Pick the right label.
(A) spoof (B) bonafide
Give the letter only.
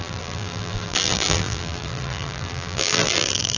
A